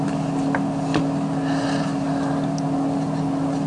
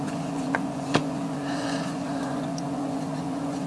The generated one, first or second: second